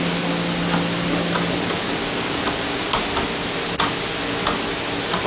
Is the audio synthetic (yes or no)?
no